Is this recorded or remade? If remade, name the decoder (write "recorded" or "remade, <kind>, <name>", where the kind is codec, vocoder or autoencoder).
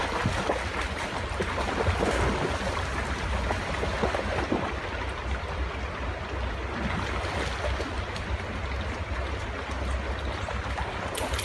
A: recorded